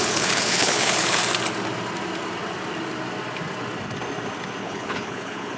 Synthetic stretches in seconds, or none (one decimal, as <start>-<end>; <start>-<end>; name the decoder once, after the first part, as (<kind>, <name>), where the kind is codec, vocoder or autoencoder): 0.0-1.2 (codec, HILCodec); 4.6-5.6